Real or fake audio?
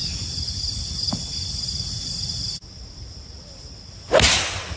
real